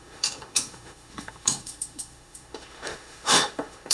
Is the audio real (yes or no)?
no